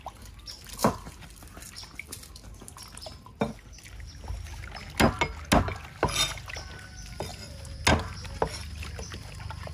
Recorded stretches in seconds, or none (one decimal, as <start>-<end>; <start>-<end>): 0.0-0.8; 1.7-9.7